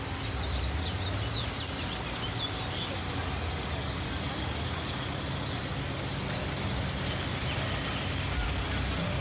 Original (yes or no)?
yes